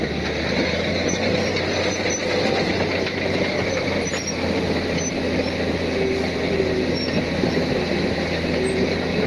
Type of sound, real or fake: real